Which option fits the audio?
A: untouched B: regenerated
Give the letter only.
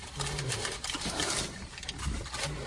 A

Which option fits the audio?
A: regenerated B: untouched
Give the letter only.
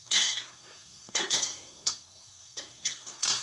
A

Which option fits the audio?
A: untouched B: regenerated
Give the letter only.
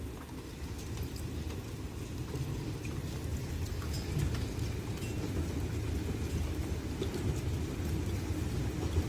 A